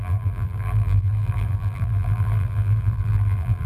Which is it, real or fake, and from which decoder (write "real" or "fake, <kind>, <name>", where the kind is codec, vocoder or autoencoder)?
fake, vocoder, BigVGAN v2